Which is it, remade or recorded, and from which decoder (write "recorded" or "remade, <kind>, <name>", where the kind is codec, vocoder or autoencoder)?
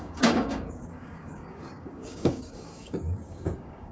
remade, codec, DAC